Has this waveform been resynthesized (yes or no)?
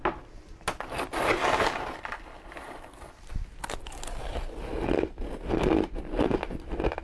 no